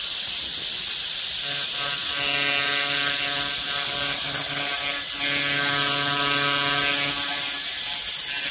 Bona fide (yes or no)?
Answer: yes